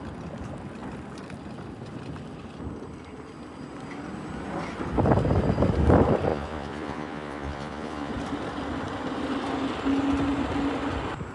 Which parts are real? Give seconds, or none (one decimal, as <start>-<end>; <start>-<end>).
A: 0.0-6.3; 8.1-11.3